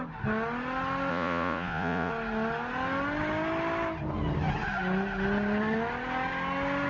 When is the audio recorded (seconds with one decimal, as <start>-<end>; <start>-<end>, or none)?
0.0-1.1; 2.1-6.9